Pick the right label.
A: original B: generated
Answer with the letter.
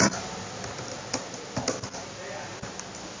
A